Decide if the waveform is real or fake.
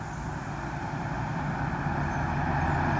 real